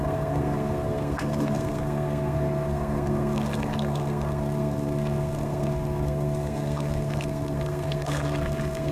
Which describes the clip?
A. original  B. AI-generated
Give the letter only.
B